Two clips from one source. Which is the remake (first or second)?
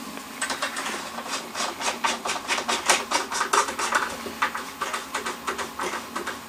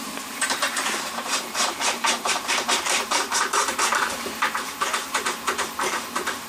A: second